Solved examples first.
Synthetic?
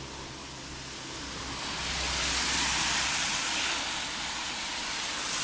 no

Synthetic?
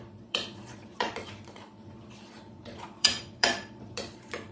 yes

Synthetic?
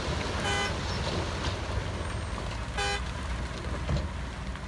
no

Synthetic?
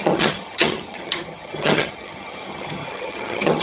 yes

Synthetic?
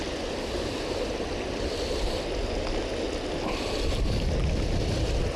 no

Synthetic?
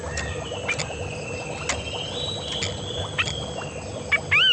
no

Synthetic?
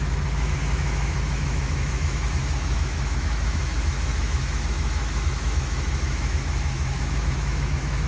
yes